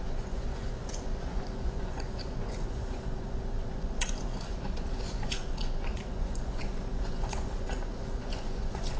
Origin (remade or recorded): remade